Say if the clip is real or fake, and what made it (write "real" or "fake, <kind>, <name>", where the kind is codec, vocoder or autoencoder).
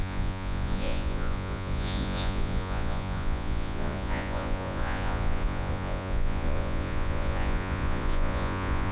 fake, vocoder, Vocos